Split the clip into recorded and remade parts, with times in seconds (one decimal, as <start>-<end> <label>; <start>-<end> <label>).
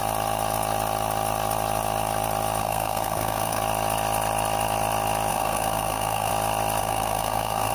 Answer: 0.0-2.6 recorded; 2.6-3.6 remade; 3.6-5.3 recorded; 5.3-6.3 remade; 6.3-6.8 recorded; 6.8-7.7 remade